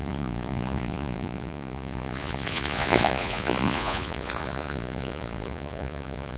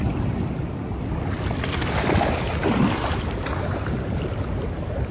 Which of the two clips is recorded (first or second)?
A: second